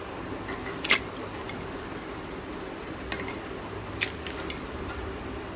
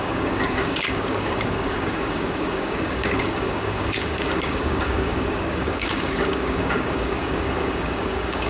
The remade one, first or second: second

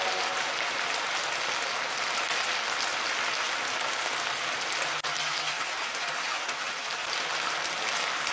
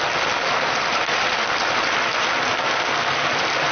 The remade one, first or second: second